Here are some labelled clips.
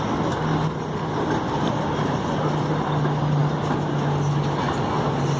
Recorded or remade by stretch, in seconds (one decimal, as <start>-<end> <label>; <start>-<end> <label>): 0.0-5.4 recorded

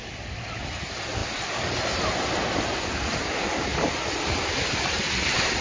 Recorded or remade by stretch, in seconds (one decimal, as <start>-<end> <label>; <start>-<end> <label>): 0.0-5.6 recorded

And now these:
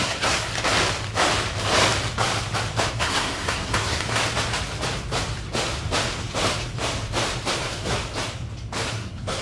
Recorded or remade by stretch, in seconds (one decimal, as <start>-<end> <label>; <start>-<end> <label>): 0.0-0.5 remade; 0.5-2.9 recorded; 2.9-4.2 remade; 4.2-7.6 recorded; 7.6-8.0 remade; 8.0-8.9 recorded; 8.9-9.4 remade

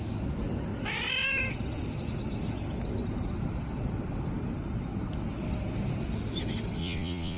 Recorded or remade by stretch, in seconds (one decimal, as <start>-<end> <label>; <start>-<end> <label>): 0.0-6.8 recorded; 6.8-7.4 remade